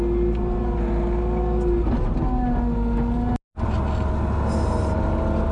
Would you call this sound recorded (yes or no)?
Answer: yes